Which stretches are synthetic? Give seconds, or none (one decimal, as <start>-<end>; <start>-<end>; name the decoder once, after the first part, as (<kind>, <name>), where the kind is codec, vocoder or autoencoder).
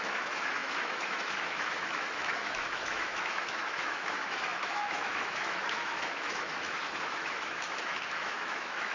0.0-8.9 (autoencoder, DAC-VAE)